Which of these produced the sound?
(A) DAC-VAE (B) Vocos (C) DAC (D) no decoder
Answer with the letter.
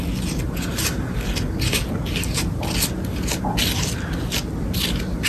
D